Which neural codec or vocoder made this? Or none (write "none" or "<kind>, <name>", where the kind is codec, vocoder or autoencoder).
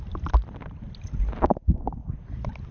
none